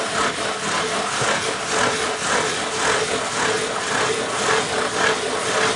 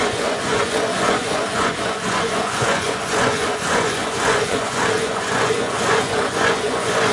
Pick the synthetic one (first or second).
second